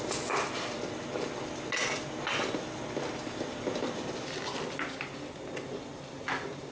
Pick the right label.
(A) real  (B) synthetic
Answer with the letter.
A